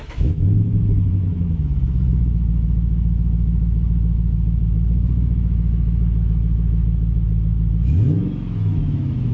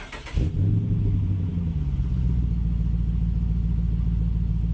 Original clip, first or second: second